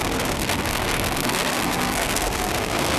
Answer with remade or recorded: remade